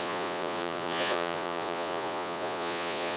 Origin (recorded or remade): remade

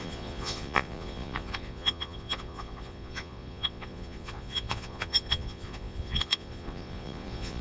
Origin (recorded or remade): remade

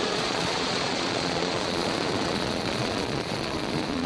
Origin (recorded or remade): remade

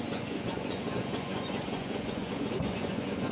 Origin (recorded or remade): remade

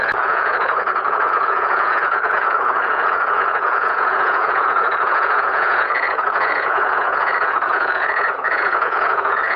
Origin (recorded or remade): remade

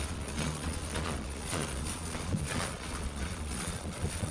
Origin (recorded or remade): remade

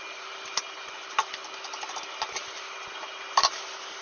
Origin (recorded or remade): recorded